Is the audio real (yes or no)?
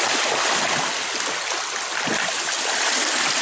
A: yes